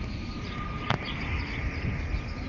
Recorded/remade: recorded